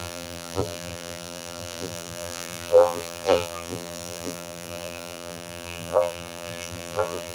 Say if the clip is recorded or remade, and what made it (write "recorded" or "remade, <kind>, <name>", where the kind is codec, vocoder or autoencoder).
remade, vocoder, BigVGAN v2